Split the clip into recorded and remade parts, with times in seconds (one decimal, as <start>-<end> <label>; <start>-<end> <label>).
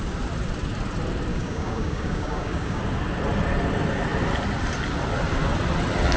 0.0-1.3 recorded; 1.3-2.8 remade; 2.8-6.2 recorded